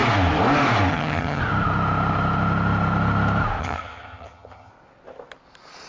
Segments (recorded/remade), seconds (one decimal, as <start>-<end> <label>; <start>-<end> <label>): 0.0-0.9 recorded; 0.9-1.4 remade; 1.4-3.6 recorded; 3.6-4.7 remade; 4.7-5.9 recorded